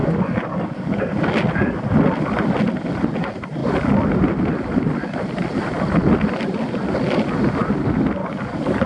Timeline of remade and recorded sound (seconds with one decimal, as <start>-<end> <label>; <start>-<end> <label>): 0.0-1.0 remade; 1.0-8.2 recorded; 8.2-8.9 remade